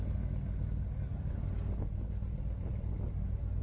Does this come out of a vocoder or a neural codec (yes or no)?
no